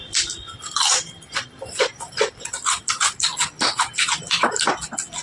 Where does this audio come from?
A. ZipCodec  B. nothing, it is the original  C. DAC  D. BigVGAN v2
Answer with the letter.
D